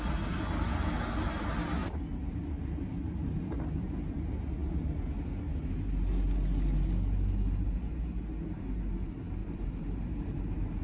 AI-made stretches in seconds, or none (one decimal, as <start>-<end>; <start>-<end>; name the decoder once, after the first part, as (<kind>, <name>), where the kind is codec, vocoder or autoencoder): 1.8-2.5 (vocoder, BigVGAN v2); 9.4-10.8